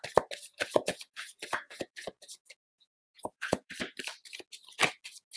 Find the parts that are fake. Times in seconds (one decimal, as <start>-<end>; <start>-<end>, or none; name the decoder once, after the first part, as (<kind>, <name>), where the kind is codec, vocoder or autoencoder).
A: 0.5-3.7 (vocoder, Vocos)